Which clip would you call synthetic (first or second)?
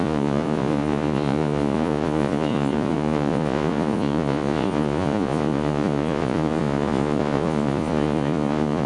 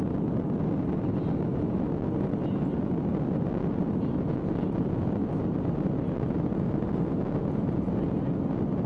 first